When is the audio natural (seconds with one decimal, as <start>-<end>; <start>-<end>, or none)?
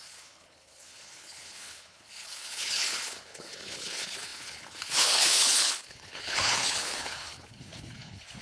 none